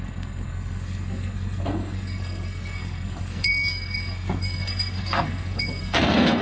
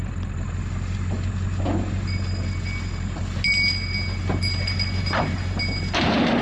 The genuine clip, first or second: second